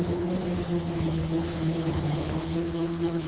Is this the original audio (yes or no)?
no